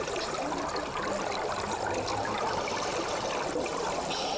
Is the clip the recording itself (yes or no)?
yes